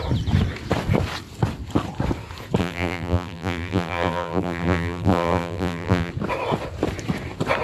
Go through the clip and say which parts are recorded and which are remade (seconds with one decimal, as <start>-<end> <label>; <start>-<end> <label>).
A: 0.0-2.6 recorded; 2.6-6.1 remade; 6.1-7.6 recorded

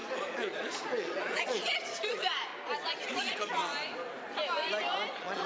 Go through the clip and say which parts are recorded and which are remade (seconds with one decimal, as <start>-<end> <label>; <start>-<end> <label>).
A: 0.0-2.5 remade; 2.5-3.1 recorded; 3.1-3.6 remade; 3.6-5.1 recorded; 5.1-5.5 remade

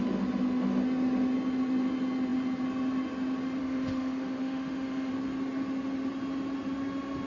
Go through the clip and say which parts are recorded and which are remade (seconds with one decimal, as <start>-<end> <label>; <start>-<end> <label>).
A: 0.0-3.6 recorded; 3.6-5.1 remade; 5.1-7.3 recorded

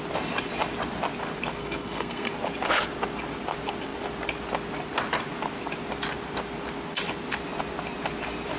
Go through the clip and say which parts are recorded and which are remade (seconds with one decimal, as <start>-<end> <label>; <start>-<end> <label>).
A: 0.0-1.6 recorded; 1.6-2.3 remade; 2.3-8.6 recorded